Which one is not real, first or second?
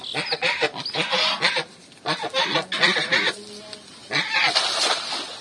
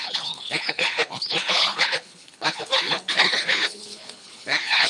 second